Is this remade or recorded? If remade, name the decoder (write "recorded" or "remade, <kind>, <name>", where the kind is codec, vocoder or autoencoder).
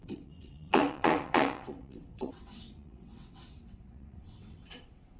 remade, vocoder, WaveNeXt